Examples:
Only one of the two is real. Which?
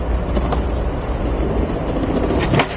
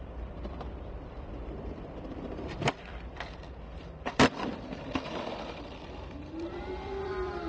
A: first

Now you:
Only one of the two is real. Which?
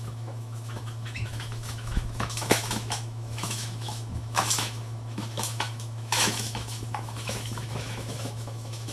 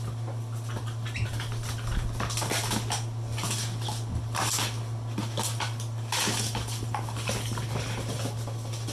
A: second